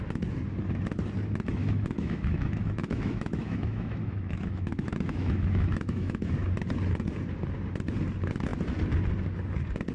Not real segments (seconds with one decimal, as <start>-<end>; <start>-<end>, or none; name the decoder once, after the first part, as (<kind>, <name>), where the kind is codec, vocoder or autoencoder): 1.6-6.3 (autoencoder, DAC-VAE)